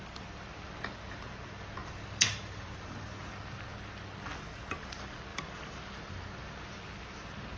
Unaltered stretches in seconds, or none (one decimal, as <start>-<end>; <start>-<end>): 0.0-1.8; 3.3-5.3; 5.8-7.6